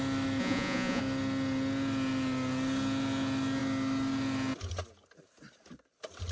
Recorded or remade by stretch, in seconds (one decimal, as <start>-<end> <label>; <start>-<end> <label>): 0.0-0.4 recorded; 0.4-1.0 remade; 1.0-6.3 recorded